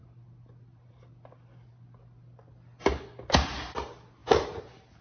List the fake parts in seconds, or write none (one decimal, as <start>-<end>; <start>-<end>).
none